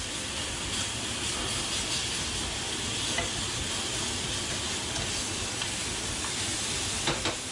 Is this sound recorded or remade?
recorded